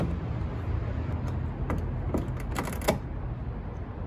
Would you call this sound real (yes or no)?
yes